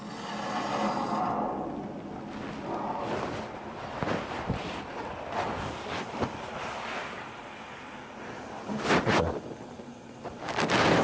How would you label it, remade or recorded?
recorded